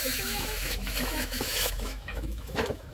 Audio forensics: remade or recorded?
remade